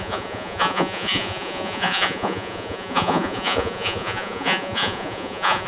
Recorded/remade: remade